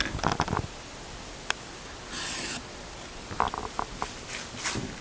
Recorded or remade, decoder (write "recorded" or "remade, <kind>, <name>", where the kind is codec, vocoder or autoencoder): recorded